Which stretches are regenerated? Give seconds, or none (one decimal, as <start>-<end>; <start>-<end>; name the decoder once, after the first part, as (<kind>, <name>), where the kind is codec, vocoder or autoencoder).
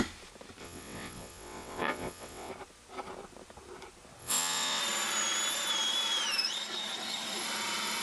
0.6-2.5 (vocoder, WaveNeXt); 4.2-4.8